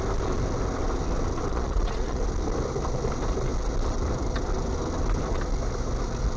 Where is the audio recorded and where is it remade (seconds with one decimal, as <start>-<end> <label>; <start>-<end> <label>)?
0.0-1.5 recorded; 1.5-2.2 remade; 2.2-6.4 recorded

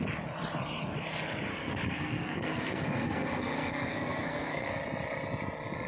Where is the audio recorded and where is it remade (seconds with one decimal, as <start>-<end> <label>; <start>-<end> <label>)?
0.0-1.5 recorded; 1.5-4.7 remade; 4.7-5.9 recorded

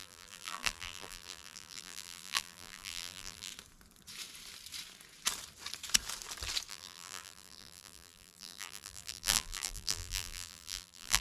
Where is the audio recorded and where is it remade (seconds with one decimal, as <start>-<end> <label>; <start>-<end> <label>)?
0.0-3.5 remade; 3.5-6.7 recorded; 6.7-11.2 remade